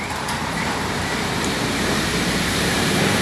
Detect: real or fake fake